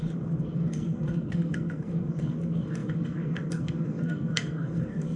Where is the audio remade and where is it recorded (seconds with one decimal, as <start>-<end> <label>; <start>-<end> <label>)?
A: 0.0-5.2 remade